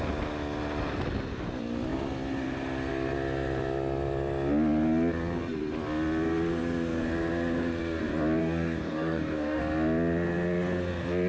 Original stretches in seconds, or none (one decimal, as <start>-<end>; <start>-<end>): 0.0-8.4; 9.6-11.3